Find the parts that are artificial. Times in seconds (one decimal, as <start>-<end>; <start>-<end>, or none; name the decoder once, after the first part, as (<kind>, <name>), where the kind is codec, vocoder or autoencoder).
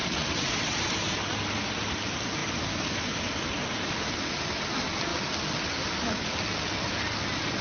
0.0-0.5 (vocoder, WaveNeXt)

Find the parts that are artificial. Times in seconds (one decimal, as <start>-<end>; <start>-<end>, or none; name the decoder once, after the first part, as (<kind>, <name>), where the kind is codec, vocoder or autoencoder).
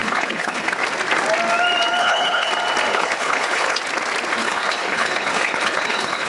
0.0-0.7 (codec, HILCodec); 2.0-2.5; 2.9-3.8; 4.4-6.3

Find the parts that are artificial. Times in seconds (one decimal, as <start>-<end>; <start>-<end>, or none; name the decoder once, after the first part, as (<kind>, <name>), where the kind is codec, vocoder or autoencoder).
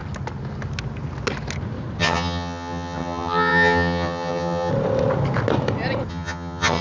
2.0-4.7 (vocoder, HiFi-GAN); 6.1-6.8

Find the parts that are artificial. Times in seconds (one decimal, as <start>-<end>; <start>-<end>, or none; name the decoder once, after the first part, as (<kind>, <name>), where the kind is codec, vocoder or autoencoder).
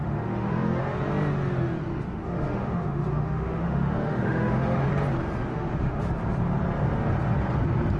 0.0-0.8 (autoencoder, DAC-VAE); 1.9-4.9; 5.5-6.0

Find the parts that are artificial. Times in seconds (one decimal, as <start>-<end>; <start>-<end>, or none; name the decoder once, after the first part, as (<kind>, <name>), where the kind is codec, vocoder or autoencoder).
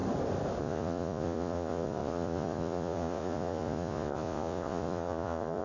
0.6-5.6 (vocoder, Vocos)